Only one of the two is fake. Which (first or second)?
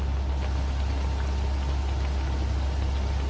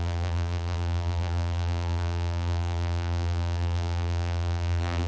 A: second